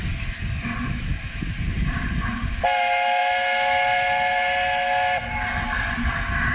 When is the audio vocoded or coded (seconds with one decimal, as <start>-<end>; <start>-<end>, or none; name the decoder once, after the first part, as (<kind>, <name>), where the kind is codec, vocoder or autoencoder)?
none